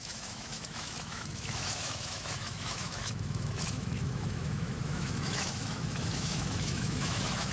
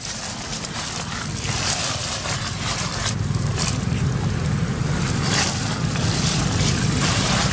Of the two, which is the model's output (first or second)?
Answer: first